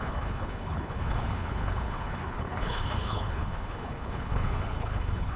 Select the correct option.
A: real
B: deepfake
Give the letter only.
B